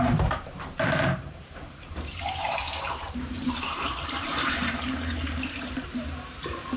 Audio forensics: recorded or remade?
remade